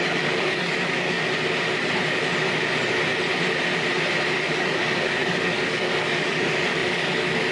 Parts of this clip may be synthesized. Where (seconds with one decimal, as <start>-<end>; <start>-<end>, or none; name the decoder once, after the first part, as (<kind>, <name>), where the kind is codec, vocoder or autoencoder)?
0.0-1.2 (codec, DAC); 4.5-7.5